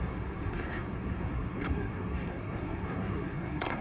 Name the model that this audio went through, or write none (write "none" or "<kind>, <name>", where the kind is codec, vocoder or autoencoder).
codec, SNAC